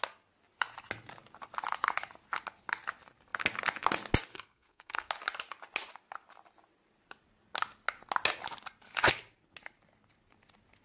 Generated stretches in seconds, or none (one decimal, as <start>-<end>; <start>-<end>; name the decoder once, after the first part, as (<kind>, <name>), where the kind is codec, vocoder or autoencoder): 4.3-5.1 (codec, SNAC)